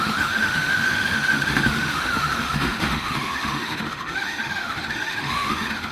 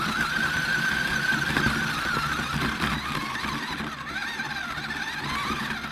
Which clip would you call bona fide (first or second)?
second